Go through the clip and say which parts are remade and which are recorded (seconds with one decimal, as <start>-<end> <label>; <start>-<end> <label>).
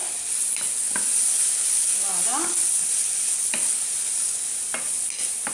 0.0-5.5 recorded